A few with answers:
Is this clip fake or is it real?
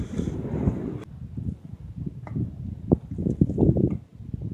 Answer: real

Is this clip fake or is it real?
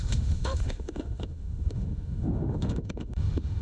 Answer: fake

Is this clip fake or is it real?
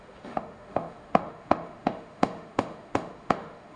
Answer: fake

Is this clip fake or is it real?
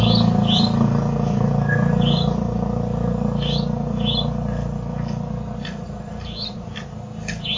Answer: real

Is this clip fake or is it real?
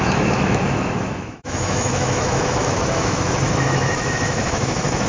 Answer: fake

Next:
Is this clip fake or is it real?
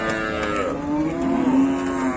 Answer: real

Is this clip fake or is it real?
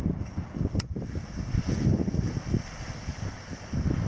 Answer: real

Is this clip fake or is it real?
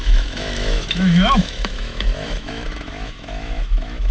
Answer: fake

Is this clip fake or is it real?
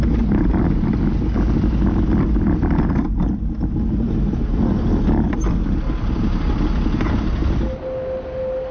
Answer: real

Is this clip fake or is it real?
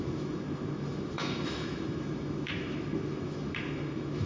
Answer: fake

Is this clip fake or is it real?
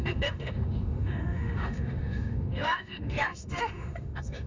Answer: fake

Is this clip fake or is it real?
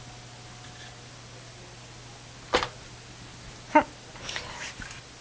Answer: real